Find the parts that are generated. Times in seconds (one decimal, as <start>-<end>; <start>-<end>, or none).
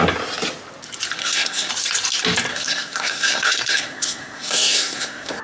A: 1.2-1.7; 2.5-5.4